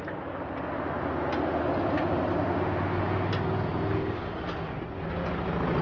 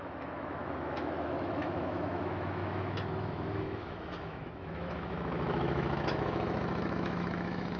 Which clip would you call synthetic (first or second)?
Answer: second